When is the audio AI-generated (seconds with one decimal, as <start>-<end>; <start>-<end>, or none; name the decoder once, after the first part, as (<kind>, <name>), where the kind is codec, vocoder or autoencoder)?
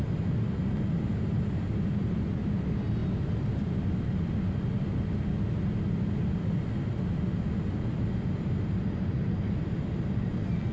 none